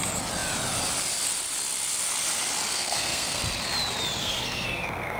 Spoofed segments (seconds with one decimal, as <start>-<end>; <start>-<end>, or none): 2.7-3.4; 4.2-5.2

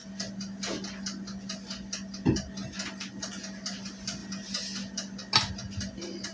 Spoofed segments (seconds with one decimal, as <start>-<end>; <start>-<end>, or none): none

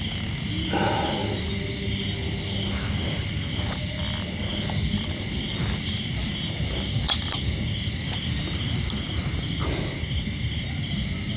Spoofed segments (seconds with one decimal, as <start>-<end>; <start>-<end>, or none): none

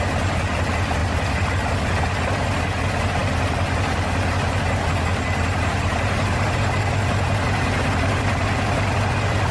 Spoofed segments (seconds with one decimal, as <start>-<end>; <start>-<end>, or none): none

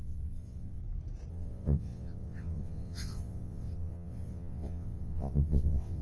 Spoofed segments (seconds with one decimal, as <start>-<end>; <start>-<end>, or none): 0.0-0.8; 1.3-6.0